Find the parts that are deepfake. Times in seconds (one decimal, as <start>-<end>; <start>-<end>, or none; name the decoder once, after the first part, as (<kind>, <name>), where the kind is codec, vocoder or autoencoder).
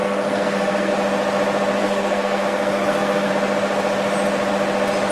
0.0-0.9 (codec, SNAC); 1.8-3.3